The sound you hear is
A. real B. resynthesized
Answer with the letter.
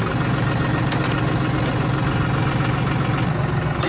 A